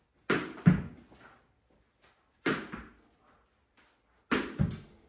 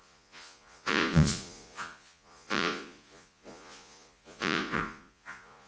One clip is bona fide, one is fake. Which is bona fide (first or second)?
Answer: first